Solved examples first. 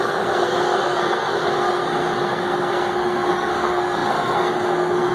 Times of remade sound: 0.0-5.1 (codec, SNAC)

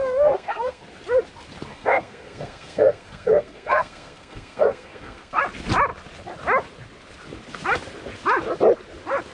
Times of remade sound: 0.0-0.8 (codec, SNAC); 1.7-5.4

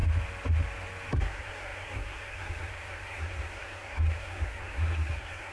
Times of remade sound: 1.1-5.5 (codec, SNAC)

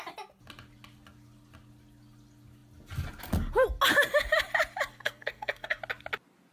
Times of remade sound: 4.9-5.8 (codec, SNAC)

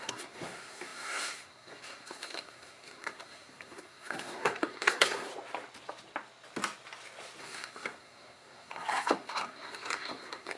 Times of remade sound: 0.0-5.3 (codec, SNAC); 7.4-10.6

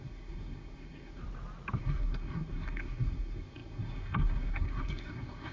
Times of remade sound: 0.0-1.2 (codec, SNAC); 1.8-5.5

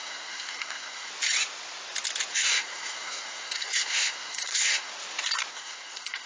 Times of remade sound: 0.0-1.1 (codec, SNAC); 2.3-4.9; 5.5-6.3

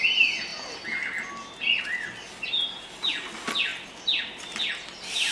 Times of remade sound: none